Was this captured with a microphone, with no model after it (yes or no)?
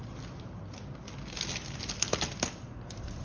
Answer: yes